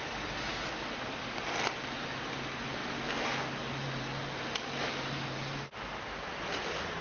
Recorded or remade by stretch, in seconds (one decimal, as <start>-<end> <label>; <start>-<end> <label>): 0.0-7.0 recorded